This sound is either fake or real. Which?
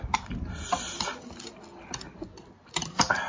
real